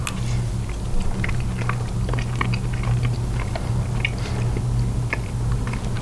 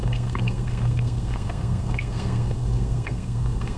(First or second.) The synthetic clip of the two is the second